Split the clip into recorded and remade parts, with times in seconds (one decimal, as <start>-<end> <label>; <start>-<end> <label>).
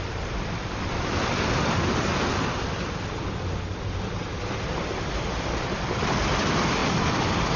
0.0-7.6 recorded